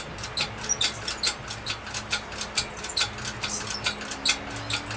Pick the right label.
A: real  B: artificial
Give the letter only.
A